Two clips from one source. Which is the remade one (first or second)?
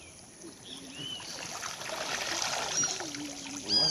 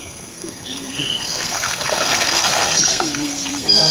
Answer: second